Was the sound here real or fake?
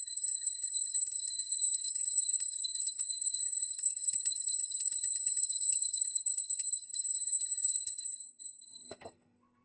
fake